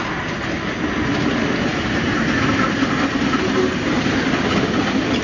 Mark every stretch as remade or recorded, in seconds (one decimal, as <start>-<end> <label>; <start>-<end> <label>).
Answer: 0.0-5.2 recorded